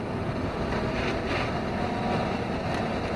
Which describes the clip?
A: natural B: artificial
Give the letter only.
A